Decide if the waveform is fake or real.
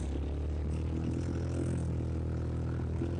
real